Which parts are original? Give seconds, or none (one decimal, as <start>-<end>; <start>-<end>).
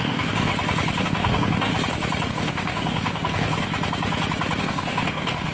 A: 0.5-1.0; 1.7-2.3; 3.7-4.6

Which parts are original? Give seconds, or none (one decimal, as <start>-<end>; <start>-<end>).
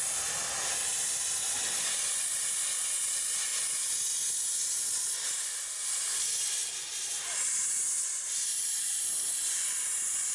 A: 0.0-10.3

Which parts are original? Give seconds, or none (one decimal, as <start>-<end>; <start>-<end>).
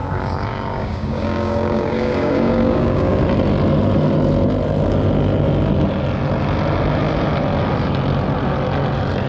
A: 3.2-9.3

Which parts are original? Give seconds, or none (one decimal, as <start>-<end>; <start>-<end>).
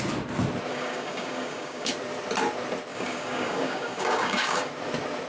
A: 0.0-0.7; 1.9-2.9; 4.7-5.3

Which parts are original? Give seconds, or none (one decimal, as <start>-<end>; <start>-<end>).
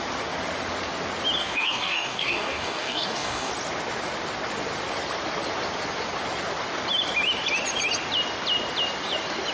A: 0.0-1.4; 3.5-9.5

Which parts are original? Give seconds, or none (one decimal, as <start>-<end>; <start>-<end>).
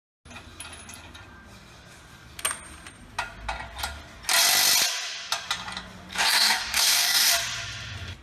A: 0.0-6.1; 7.3-8.2